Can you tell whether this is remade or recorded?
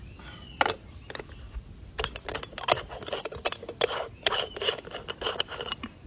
recorded